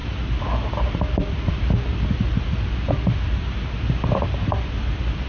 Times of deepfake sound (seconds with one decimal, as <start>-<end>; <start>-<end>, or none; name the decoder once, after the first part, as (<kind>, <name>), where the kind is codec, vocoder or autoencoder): none